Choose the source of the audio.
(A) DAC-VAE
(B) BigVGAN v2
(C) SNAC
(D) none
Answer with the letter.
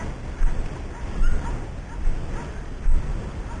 D